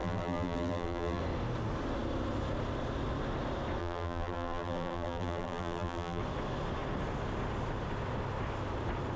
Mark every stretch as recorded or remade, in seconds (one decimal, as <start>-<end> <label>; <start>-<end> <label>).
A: 0.0-1.2 remade; 1.2-3.8 recorded; 3.8-6.2 remade; 6.2-9.2 recorded

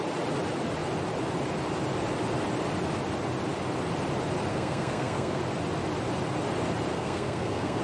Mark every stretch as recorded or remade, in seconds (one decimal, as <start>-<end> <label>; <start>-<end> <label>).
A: 0.0-4.5 recorded; 4.5-5.4 remade; 5.4-6.9 recorded; 6.9-7.8 remade

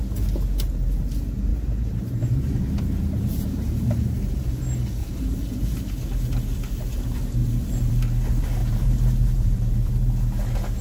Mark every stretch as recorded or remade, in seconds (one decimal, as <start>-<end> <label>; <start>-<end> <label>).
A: 0.0-1.5 recorded; 1.5-4.6 remade; 4.6-5.0 recorded; 5.0-5.8 remade; 5.8-7.4 recorded; 7.4-7.9 remade; 7.9-8.6 recorded; 8.6-9.9 remade; 9.9-10.8 recorded

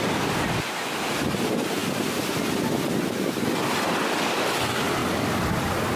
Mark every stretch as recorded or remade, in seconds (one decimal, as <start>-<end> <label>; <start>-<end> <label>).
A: 0.0-5.0 recorded; 5.0-6.0 remade

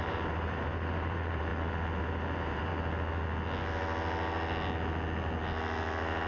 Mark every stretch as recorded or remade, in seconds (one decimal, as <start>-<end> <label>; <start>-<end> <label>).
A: 0.0-1.5 remade; 1.5-2.0 recorded; 2.0-2.7 remade; 2.7-6.3 recorded